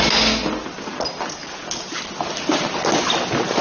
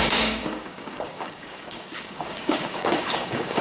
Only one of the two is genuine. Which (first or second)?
first